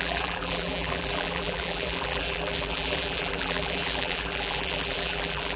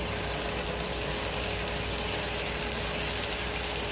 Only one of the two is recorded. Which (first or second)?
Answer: second